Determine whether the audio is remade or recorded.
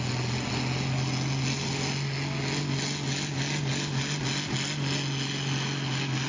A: recorded